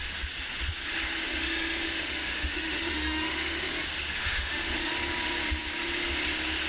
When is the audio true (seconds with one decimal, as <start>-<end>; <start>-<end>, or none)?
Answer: 0.0-1.2; 3.7-4.2; 4.9-6.7